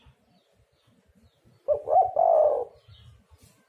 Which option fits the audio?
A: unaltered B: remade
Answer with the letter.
A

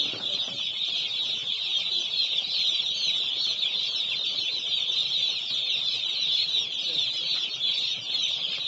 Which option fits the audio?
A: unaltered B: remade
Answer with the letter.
A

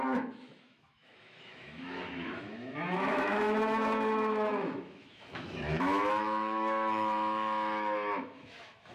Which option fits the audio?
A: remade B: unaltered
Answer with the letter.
A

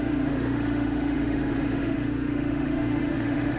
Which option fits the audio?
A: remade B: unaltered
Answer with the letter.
A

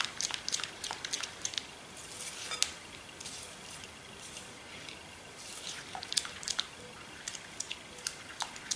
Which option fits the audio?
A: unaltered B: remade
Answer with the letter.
A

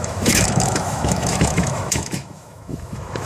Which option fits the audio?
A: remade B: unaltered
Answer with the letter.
A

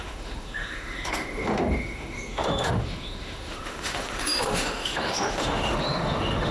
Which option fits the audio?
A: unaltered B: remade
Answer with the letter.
B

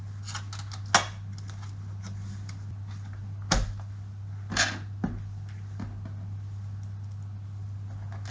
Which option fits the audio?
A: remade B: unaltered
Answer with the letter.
B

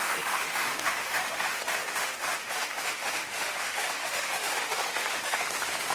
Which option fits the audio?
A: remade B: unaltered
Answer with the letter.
A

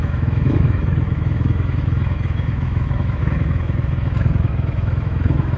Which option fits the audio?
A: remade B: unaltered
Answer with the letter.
A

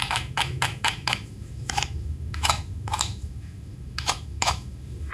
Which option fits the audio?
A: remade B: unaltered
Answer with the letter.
A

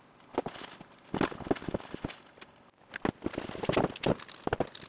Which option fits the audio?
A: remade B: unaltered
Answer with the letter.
B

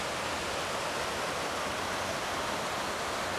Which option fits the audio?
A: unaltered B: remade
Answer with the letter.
A